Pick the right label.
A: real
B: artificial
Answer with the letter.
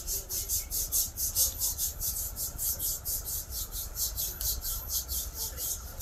A